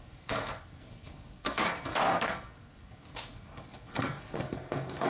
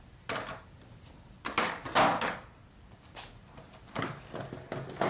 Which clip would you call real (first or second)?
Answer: second